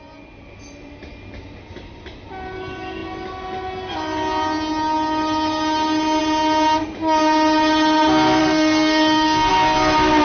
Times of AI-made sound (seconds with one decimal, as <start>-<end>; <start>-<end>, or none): 8.4-9.5